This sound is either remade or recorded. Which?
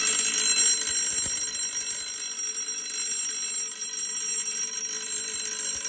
recorded